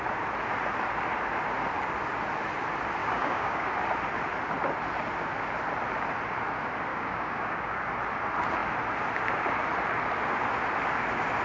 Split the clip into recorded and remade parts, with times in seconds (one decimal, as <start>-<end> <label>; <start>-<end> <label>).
0.0-3.0 recorded; 3.0-3.7 remade; 3.7-6.9 recorded; 6.9-7.9 remade; 7.9-11.4 recorded